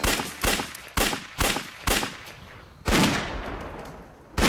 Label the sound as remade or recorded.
recorded